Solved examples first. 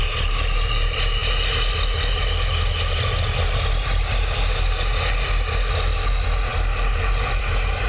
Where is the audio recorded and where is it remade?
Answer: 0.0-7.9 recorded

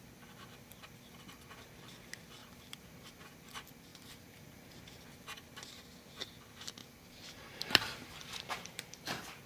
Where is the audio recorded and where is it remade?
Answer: 0.0-2.4 recorded; 2.4-3.2 remade; 3.2-3.9 recorded; 3.9-4.8 remade; 4.8-6.8 recorded; 6.8-9.5 remade

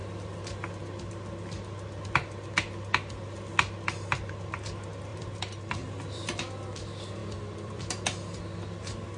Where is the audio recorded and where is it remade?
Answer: 0.0-5.1 recorded; 5.1-6.4 remade; 6.4-7.2 recorded; 7.2-7.8 remade; 7.8-9.2 recorded